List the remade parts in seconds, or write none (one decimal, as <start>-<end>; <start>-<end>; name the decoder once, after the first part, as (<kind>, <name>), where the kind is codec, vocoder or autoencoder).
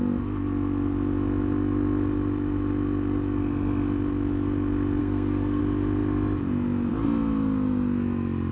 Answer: 5.0-5.6 (codec, SNAC)